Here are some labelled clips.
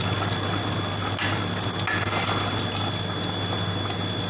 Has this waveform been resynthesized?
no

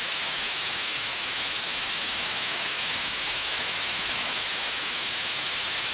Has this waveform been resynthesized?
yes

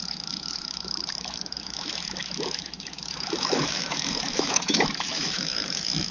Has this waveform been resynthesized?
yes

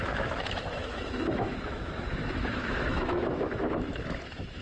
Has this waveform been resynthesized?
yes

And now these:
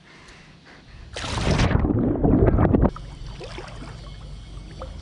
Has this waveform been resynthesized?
no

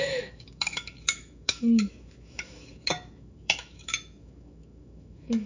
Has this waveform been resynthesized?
yes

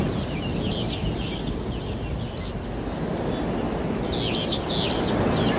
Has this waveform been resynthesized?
no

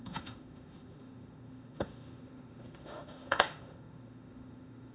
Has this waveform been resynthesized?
yes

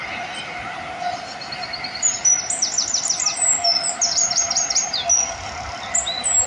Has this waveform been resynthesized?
no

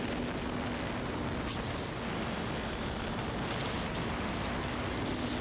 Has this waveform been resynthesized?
no